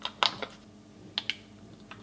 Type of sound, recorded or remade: recorded